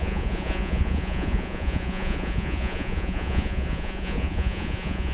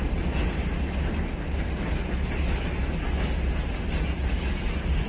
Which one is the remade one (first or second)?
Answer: first